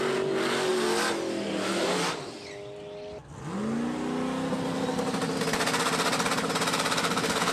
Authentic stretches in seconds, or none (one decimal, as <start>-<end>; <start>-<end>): 0.0-7.5